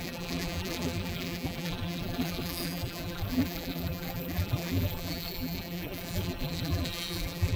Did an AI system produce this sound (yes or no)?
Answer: yes